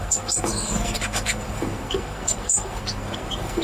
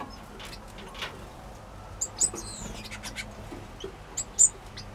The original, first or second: second